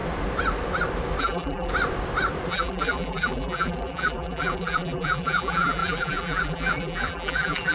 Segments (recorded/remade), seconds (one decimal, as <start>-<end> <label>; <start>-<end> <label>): 0.0-1.2 recorded; 1.2-1.7 remade; 1.7-2.5 recorded; 2.5-7.7 remade